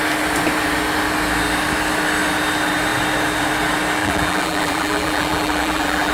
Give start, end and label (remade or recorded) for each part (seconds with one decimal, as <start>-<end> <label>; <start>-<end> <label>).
0.0-4.0 recorded; 4.0-6.1 remade